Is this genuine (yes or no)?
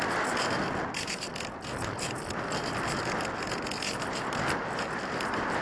yes